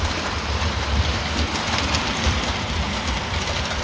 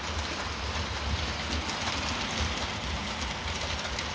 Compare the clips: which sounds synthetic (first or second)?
first